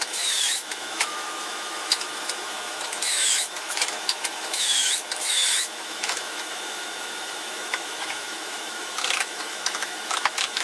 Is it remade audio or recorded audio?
remade